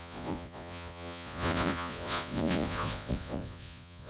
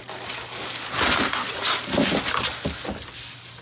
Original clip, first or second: second